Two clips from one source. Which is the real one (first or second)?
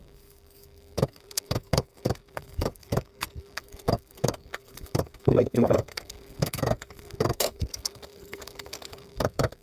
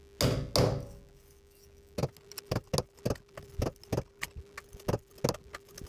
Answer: second